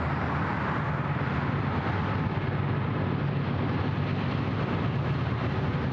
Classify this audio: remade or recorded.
recorded